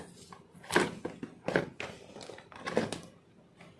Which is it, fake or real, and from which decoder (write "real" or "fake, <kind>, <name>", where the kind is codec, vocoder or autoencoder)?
real